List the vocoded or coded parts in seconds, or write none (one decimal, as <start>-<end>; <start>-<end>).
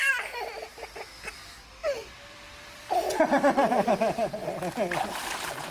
0.0-0.7; 1.3-5.7